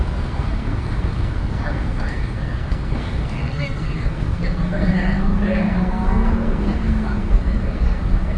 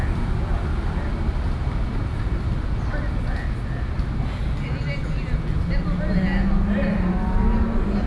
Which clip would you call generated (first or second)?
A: first